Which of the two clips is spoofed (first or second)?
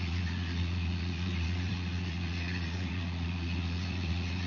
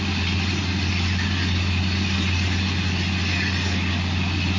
first